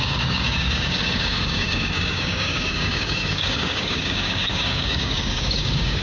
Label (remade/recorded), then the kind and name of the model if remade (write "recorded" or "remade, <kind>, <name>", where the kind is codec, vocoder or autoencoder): remade, codec, DAC